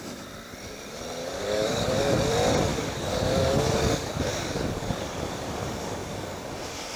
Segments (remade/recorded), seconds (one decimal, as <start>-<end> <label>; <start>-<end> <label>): 0.0-1.2 recorded; 1.2-2.1 remade; 2.1-2.7 recorded; 2.7-7.0 remade